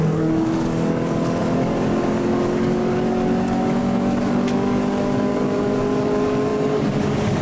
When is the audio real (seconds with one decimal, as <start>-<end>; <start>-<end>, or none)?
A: none